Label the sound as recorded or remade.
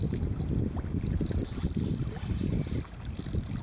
recorded